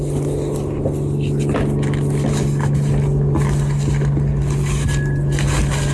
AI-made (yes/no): no